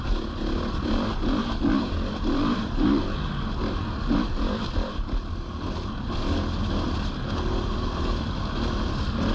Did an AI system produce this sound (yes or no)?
no